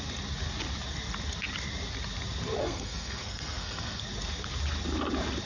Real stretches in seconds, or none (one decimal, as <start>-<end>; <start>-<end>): 0.0-2.6; 4.0-5.5